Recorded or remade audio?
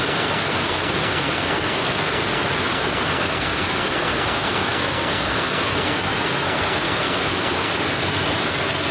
remade